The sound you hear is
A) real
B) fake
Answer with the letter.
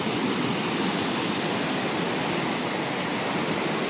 A